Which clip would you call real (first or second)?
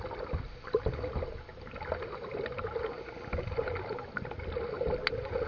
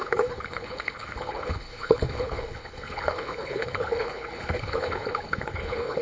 first